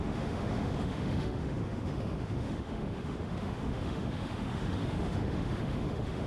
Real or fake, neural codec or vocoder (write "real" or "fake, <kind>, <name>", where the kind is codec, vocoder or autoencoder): fake, autoencoder, DAC-VAE